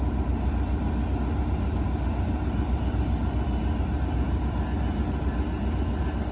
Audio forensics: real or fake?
real